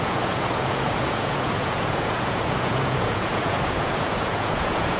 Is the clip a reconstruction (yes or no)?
yes